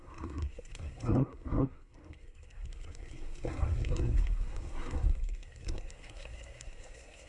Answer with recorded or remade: remade